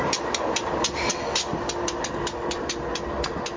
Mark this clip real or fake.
real